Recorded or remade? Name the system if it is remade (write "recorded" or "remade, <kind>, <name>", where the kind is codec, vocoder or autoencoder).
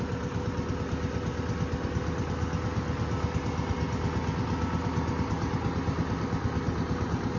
recorded